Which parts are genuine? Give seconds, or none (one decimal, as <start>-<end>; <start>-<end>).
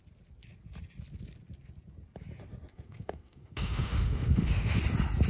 0.0-2.7; 4.8-5.3